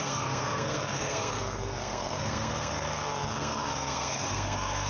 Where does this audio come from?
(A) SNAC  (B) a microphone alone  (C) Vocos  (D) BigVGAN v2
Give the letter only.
A